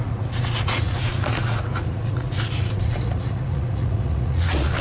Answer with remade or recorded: remade